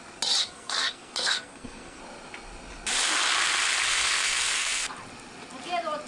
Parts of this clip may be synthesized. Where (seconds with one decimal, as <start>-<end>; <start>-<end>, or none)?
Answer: 0.4-2.0; 3.9-4.9